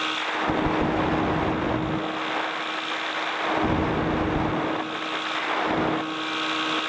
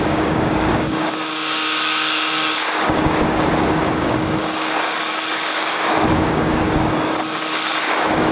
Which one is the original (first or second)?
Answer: first